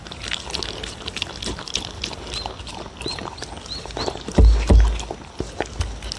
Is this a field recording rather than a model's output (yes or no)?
yes